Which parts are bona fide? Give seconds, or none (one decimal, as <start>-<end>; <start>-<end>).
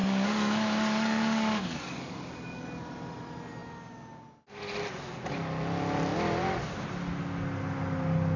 2.6-8.4